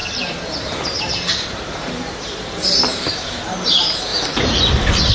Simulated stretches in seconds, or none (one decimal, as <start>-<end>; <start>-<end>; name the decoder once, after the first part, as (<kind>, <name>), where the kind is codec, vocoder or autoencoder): 0.0-4.1 (vocoder, BigVGAN v2)